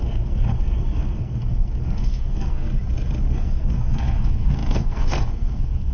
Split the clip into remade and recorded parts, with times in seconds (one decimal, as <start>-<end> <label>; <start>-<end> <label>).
0.0-2.7 remade; 2.7-3.3 recorded; 3.3-5.9 remade